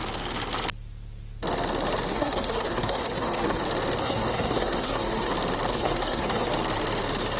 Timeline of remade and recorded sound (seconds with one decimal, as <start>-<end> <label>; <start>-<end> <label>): 0.0-2.1 recorded; 2.1-3.6 remade; 3.6-4.0 recorded; 4.0-5.3 remade; 5.3-5.7 recorded; 5.7-6.5 remade; 6.5-7.4 recorded